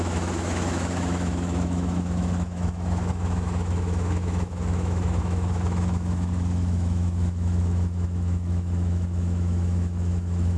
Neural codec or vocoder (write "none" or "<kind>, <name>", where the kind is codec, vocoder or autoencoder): autoencoder, DAC-VAE